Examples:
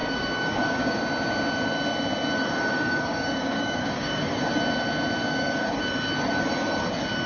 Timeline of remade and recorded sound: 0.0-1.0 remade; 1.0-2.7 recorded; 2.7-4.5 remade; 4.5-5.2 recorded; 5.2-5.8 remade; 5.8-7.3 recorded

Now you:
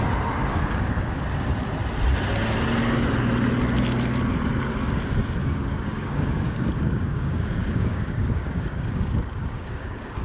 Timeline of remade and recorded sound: 0.0-0.5 recorded; 0.5-1.2 remade; 1.2-5.4 recorded; 5.4-10.2 remade

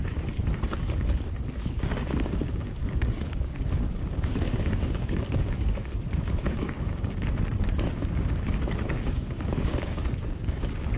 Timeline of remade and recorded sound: 0.0-1.6 recorded; 1.6-11.0 remade

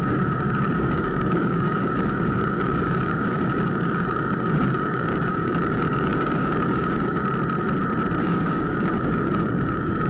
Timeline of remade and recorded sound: 0.0-7.3 remade; 7.3-8.2 recorded; 8.2-10.1 remade

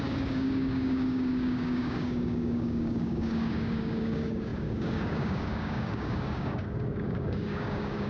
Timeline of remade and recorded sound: 0.0-8.1 remade

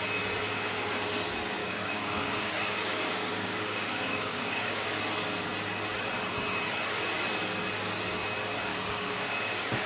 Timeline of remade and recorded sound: 0.0-1.6 recorded; 1.6-5.0 remade; 5.0-8.7 recorded; 8.7-9.9 remade